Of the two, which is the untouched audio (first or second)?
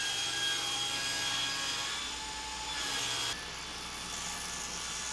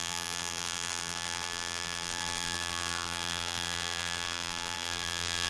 first